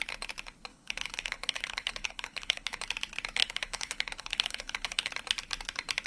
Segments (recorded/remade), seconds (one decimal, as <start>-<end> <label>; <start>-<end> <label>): 0.0-0.7 recorded; 0.7-2.8 remade; 2.8-3.4 recorded; 3.4-5.1 remade; 5.1-6.1 recorded